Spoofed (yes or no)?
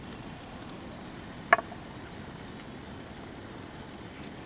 no